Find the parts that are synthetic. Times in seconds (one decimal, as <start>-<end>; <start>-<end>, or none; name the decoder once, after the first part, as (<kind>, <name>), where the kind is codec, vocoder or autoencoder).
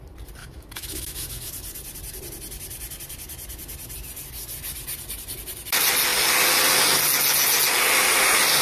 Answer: 0.4-1.5 (autoencoder, DAC-VAE)